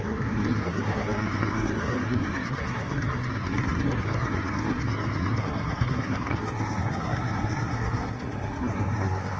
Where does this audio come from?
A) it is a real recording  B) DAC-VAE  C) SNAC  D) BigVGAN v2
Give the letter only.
C